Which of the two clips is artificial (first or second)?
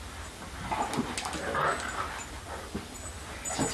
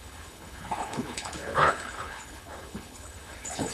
second